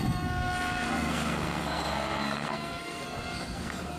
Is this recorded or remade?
remade